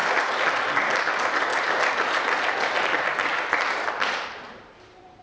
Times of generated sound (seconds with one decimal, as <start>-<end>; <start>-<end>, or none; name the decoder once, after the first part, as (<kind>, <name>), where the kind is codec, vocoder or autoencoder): 1.1-1.5 (vocoder, BigVGAN v2); 4.6-5.2